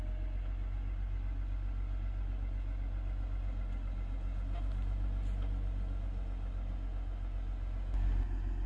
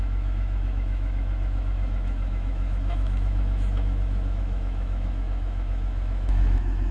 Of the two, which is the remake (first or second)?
second